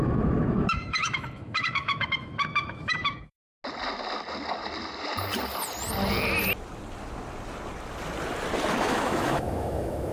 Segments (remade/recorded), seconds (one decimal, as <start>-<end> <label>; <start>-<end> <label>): 0.0-3.5 remade; 3.5-8.7 recorded; 8.7-10.1 remade